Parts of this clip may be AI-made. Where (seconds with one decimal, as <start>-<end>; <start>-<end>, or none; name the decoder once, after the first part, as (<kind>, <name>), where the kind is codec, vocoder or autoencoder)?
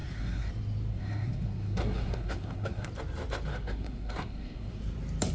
0.0-0.5 (codec, SNAC); 0.9-2.9; 3.5-4.8